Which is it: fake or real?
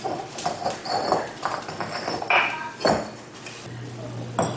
real